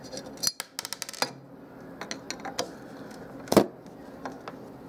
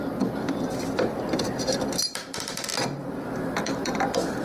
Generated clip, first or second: second